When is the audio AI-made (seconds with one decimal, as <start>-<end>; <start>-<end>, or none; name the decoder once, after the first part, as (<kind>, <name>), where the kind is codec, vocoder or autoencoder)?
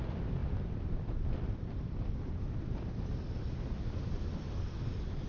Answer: none